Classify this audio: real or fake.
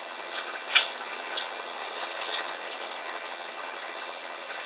fake